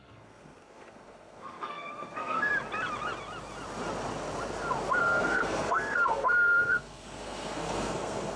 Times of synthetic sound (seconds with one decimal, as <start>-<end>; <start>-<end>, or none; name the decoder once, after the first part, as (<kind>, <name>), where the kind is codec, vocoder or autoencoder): 0.0-2.5 (codec, SNAC); 5.0-8.4